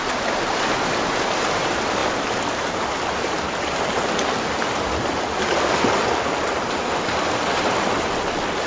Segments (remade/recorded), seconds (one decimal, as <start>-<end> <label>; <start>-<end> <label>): 0.0-8.7 recorded